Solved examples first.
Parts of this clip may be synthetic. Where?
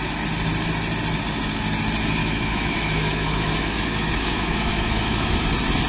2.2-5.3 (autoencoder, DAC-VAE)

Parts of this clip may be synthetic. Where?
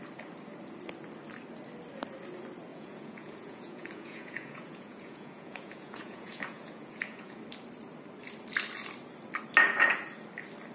2.7-7.4 (vocoder, Vocos)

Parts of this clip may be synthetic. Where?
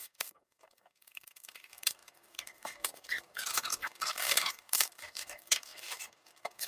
0.0-6.7 (codec, DAC)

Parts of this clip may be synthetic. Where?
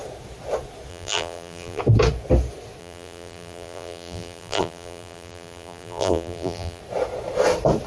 0.9-1.8 (vocoder, BigVGAN v2); 2.8-6.8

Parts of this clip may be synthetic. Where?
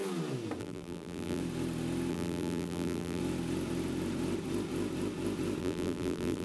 0.6-1.4 (vocoder, BigVGAN v2); 2.1-3.2; 5.6-6.4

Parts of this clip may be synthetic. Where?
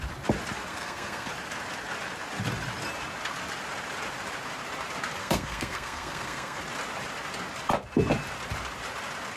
0.7-1.3 (codec, SNAC); 5.2-6.6